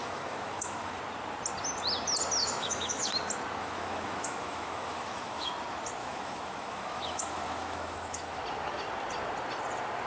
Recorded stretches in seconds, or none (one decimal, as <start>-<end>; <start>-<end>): 1.0-2.4; 3.1-3.6; 5.5-6.0; 8.4-10.1